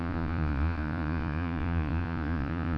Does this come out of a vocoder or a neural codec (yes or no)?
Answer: yes